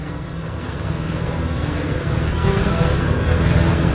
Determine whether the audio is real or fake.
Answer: fake